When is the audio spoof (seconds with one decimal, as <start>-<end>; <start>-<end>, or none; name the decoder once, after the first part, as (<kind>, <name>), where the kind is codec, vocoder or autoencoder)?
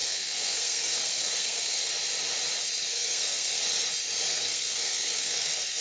0.0-1.9 (codec, SNAC); 2.9-3.6; 4.3-5.8